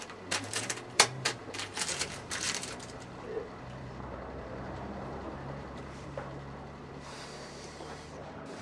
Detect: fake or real fake